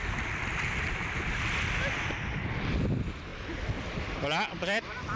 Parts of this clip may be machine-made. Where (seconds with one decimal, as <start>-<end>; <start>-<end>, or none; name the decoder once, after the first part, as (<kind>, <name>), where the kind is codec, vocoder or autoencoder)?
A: none